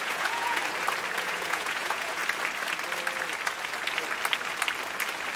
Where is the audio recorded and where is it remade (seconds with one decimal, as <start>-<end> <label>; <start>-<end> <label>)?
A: 0.0-0.6 remade; 0.6-1.2 recorded; 1.2-2.2 remade; 2.2-5.4 recorded